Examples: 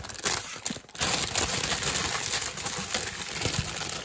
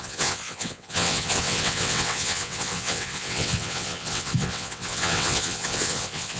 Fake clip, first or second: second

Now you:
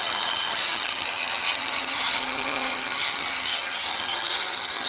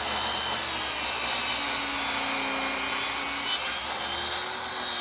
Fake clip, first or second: first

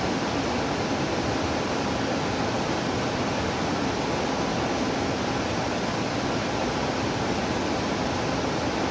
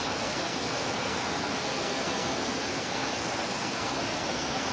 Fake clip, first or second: second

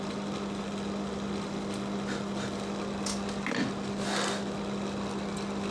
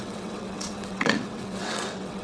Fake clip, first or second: second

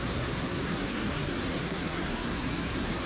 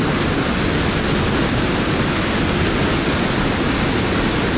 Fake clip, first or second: first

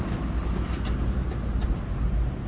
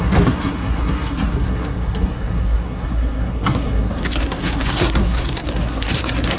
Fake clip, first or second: second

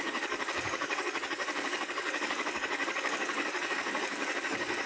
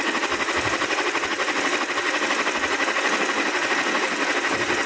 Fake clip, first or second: first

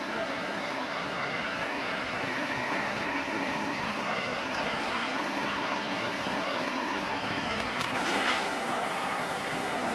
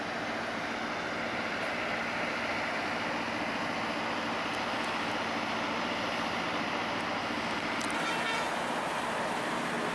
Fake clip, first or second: first